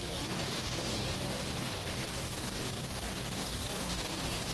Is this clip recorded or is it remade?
remade